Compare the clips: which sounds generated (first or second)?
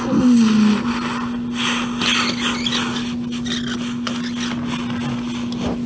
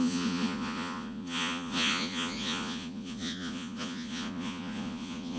second